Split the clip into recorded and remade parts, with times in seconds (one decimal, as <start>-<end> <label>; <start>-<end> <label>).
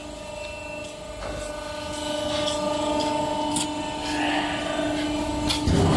0.0-6.0 recorded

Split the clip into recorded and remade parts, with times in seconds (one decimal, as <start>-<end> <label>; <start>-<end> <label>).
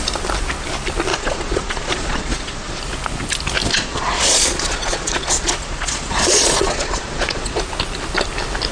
0.0-1.1 recorded; 1.1-2.8 remade; 2.8-3.7 recorded; 3.7-7.6 remade; 7.6-8.7 recorded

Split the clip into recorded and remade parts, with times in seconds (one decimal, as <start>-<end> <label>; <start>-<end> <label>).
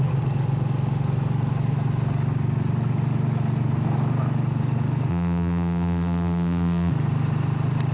0.0-5.1 recorded; 5.1-6.9 remade; 6.9-7.9 recorded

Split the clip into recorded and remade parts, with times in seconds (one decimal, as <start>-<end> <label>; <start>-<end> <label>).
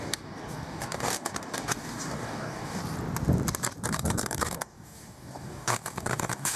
0.0-2.8 remade; 2.8-3.9 recorded; 3.9-6.6 remade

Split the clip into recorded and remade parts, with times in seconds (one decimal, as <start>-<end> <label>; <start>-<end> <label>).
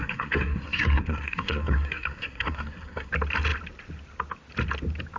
0.0-3.1 remade; 3.1-5.2 recorded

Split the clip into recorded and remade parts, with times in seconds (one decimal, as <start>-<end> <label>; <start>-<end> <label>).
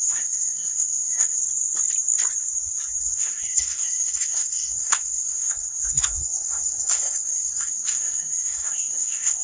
0.0-1.4 remade; 1.4-3.0 recorded; 3.0-9.4 remade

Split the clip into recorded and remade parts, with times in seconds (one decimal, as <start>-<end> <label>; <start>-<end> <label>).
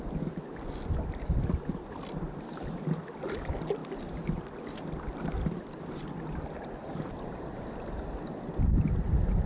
0.0-9.5 recorded